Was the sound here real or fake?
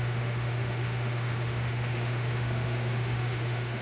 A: fake